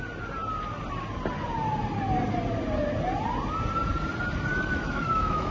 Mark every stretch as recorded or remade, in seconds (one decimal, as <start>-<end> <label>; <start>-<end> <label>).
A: 0.0-4.5 recorded; 4.5-5.5 remade